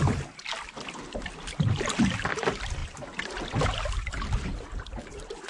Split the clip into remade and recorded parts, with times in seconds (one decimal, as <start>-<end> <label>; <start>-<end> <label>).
0.0-5.5 recorded